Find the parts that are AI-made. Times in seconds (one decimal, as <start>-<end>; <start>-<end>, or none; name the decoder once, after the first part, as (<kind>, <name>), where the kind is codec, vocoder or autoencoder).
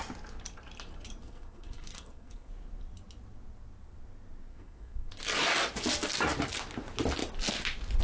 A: 1.2-2.5 (codec, SNAC); 4.5-5.1